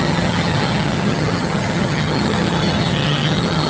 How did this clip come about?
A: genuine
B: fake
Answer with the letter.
B